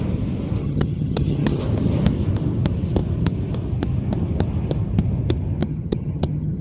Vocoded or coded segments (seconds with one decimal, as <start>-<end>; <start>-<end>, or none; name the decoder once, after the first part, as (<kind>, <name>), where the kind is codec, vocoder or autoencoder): 0.6-1.6 (vocoder, HiFi-GAN); 5.6-6.6